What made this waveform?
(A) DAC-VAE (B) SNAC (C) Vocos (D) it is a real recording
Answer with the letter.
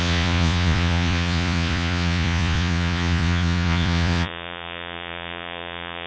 C